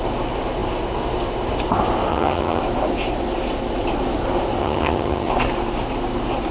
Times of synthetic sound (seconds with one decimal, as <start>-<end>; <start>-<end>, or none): 2.1-2.6; 4.6-5.3

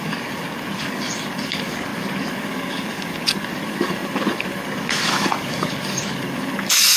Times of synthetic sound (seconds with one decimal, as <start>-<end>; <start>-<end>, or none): 0.0-7.0

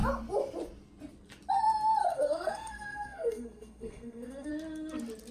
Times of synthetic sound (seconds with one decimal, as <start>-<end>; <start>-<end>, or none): 2.0-4.5